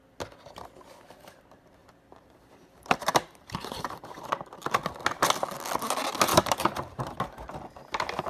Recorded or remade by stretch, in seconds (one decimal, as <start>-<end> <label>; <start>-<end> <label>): 0.0-1.8 recorded; 1.8-4.2 remade; 4.2-6.3 recorded; 6.3-7.0 remade; 7.0-8.3 recorded